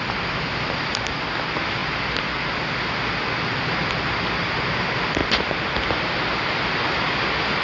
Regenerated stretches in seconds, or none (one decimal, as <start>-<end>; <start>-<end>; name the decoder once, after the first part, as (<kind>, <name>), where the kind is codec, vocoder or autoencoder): none